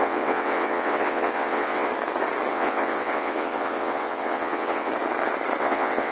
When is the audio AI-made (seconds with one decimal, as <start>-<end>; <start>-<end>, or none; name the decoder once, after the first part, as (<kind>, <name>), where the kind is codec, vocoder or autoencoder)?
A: 0.0-1.9 (vocoder, WaveNeXt); 2.5-4.9; 5.6-6.1